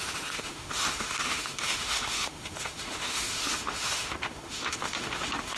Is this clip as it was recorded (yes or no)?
no